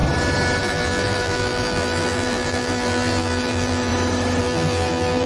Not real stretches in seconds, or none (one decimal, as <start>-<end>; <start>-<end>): 0.6-3.9; 4.4-5.3